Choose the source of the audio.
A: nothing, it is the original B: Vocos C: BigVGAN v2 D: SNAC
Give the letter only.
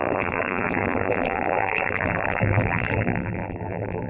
C